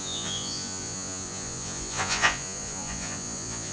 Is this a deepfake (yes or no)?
yes